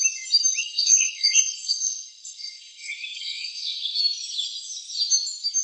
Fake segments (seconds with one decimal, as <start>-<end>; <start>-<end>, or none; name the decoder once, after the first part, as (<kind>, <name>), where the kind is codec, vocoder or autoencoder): 0.6-4.0 (codec, SNAC)